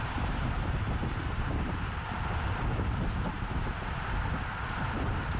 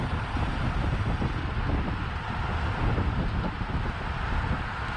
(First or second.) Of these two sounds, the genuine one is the second